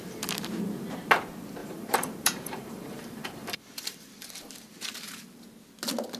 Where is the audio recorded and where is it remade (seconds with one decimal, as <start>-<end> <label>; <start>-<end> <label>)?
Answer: 0.0-1.6 recorded; 1.6-5.2 remade; 5.2-6.2 recorded